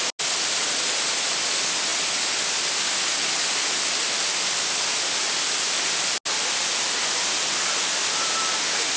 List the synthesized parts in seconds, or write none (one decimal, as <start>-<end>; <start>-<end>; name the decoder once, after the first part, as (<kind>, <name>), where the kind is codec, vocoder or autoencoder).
1.9-6.0 (vocoder, BigVGAN v2)